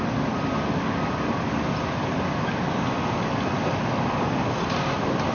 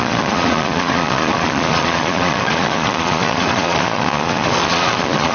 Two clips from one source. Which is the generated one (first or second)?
second